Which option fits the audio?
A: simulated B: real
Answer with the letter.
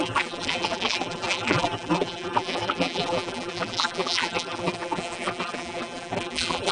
A